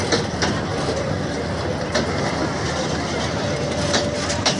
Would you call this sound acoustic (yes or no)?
yes